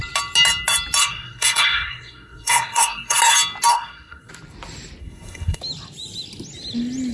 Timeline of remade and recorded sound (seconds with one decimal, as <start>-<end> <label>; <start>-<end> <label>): 0.0-1.0 recorded; 1.0-3.2 remade; 3.2-3.7 recorded; 3.7-4.3 remade; 4.3-5.0 recorded; 5.0-5.6 remade; 5.6-7.1 recorded